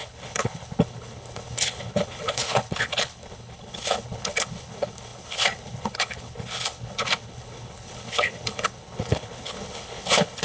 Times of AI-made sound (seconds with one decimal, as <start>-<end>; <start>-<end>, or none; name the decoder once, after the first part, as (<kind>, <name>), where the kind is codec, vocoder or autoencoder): 0.0-10.4 (codec, HILCodec)